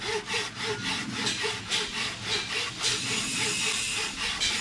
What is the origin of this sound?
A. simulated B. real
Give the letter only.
B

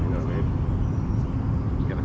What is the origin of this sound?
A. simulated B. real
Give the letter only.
B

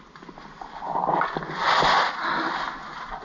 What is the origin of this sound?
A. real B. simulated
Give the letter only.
A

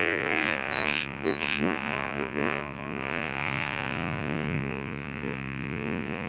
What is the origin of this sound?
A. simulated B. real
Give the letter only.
A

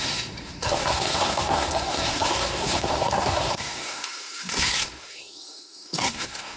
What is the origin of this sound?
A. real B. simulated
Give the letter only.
B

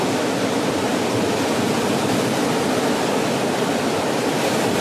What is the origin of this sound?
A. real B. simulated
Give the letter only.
A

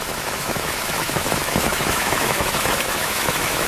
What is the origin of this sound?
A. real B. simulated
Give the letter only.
B